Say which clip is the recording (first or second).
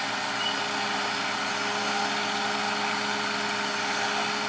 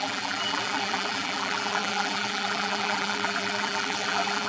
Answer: first